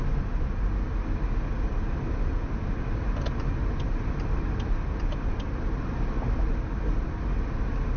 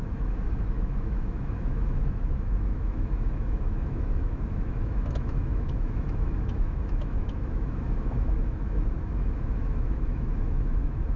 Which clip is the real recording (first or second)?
first